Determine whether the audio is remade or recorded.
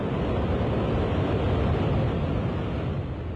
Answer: recorded